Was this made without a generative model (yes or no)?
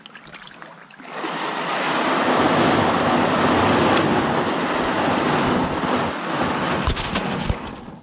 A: yes